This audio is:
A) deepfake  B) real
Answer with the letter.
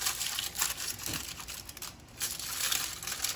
B